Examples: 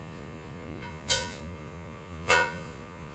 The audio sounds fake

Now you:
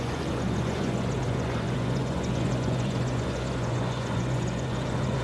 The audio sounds fake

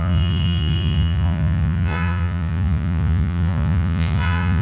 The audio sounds fake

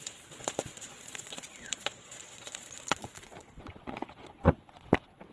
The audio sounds fake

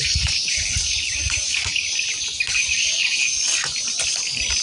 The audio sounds real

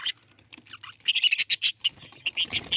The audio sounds real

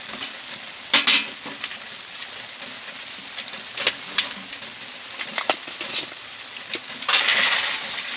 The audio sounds real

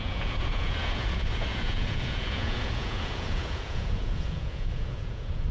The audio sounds fake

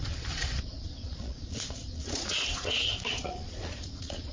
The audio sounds fake